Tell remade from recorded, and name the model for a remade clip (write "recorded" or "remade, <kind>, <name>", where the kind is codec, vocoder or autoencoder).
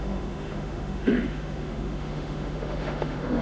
remade, autoencoder, DAC-VAE